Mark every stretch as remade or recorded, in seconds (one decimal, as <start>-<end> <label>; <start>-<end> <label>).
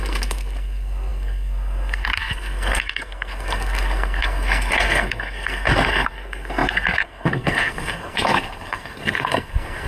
0.0-9.9 remade